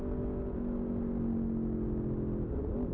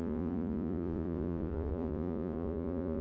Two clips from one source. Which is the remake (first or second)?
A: second